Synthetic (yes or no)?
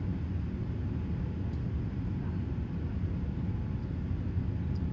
no